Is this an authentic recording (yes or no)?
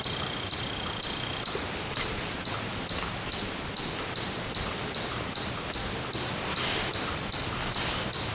yes